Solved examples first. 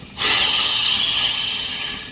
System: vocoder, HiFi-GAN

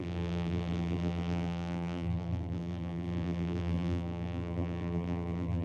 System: vocoder, BigVGAN v2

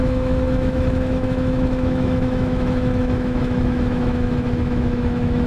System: autoencoder, DAC-VAE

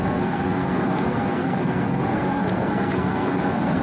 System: codec, SNAC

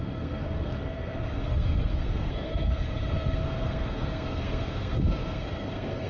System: codec, SNAC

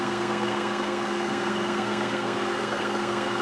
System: codec, SNAC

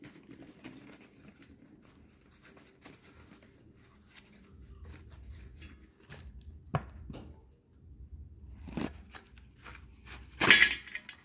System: none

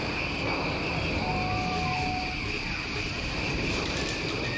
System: none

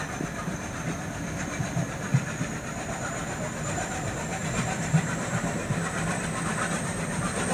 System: vocoder, BigVGAN v2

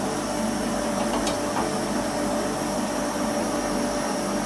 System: none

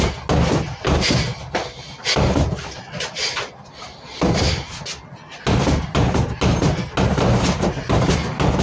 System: none